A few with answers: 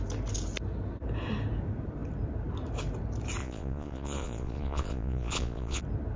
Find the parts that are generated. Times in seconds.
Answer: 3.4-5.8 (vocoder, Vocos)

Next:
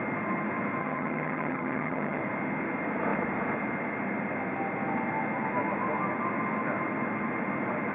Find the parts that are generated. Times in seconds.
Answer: 0.8-2.2 (vocoder, HiFi-GAN)